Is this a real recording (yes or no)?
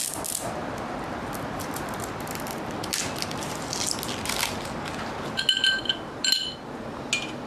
yes